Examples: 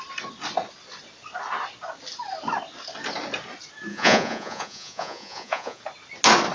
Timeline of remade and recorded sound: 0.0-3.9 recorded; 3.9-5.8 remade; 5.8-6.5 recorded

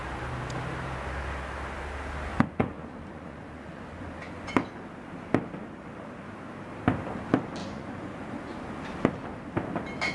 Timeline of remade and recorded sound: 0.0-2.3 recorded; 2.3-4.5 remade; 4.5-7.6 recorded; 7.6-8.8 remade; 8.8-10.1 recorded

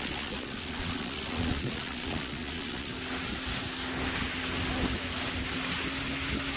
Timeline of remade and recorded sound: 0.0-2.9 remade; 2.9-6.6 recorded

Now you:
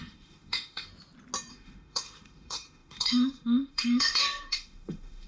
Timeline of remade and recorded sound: 0.0-0.9 remade; 0.9-1.5 recorded; 1.5-5.3 remade